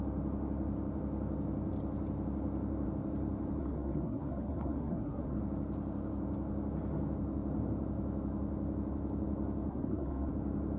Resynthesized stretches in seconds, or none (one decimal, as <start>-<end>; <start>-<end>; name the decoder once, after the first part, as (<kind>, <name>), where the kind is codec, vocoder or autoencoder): 3.6-5.4 (codec, SNAC); 9.7-10.3